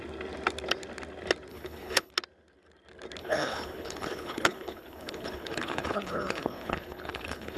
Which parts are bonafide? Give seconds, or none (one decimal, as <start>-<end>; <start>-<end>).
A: 0.0-1.5; 2.1-3.2